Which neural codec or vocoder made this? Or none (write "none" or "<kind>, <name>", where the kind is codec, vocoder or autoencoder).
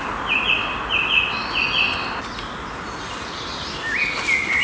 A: none